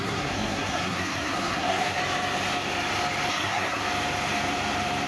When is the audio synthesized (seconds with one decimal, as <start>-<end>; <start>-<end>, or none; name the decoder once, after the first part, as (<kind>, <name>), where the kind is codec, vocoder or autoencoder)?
0.0-2.0 (codec, SNAC); 3.3-3.8